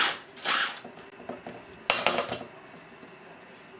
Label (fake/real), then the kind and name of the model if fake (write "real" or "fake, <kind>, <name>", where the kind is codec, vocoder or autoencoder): real